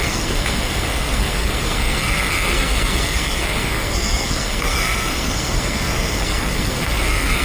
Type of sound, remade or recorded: remade